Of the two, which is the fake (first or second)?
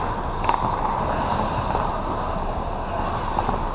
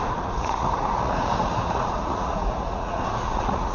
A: second